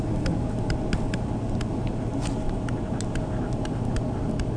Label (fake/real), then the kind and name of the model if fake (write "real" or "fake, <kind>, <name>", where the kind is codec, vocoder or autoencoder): real